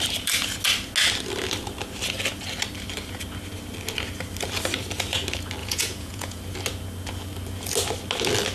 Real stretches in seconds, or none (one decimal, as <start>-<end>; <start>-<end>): 0.0-5.6; 6.4-8.5